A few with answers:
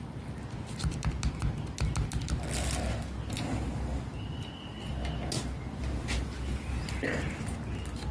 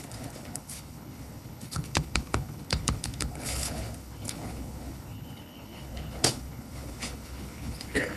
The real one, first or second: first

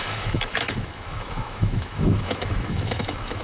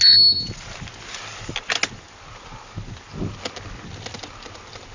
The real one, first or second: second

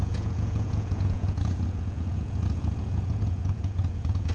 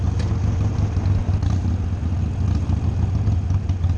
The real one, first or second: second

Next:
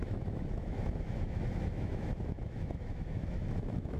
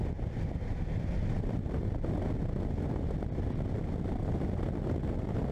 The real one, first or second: second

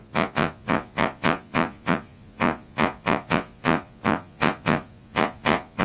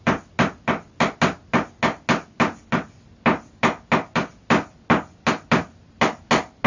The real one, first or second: second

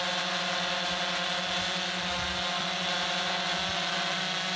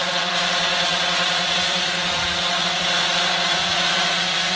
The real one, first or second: first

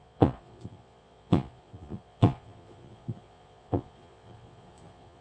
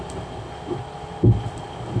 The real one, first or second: second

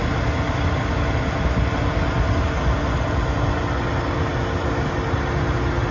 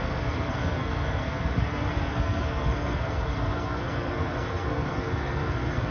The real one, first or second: first